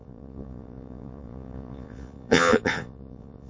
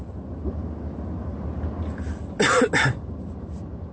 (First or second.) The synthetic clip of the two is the first